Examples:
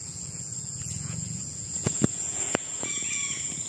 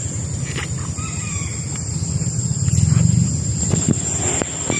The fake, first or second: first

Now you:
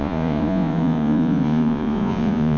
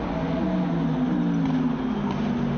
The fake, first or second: first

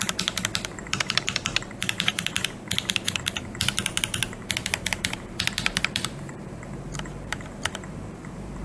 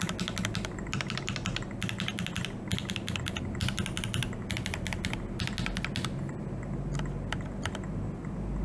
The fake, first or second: first